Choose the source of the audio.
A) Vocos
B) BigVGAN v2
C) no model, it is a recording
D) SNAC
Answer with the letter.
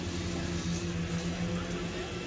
C